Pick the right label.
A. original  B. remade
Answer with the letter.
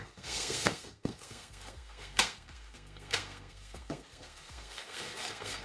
B